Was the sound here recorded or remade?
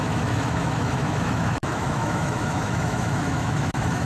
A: remade